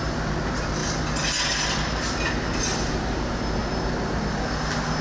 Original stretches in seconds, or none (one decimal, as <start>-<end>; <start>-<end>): 0.0-5.0